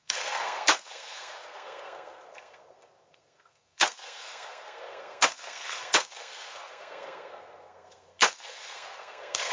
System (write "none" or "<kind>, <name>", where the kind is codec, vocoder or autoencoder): codec, SNAC